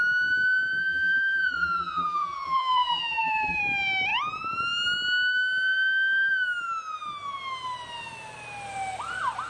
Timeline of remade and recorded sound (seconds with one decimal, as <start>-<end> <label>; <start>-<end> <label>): 0.0-0.8 recorded; 0.8-3.6 remade; 3.6-9.5 recorded